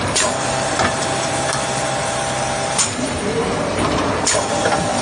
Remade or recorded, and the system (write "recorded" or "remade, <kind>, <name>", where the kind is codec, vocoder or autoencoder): remade, vocoder, BigVGAN v2